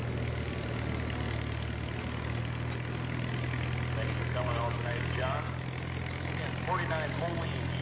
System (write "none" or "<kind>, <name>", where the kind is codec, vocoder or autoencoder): none